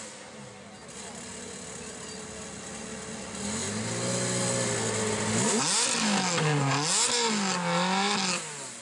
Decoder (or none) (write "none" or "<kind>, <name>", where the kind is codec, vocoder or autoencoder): none